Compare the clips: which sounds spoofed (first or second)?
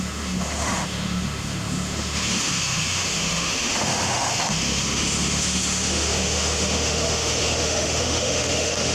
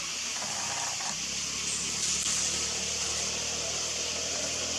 first